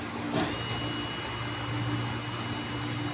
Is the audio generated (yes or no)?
no